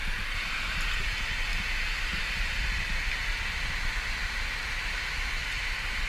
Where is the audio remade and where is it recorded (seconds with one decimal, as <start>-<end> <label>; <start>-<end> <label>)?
0.0-6.1 recorded